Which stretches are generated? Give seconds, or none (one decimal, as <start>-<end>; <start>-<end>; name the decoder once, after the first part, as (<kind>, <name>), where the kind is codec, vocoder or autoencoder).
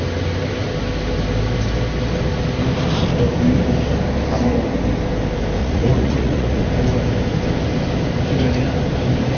5.6-6.6 (vocoder, Vocos)